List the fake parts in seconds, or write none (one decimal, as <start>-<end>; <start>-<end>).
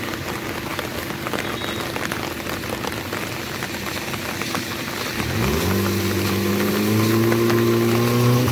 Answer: none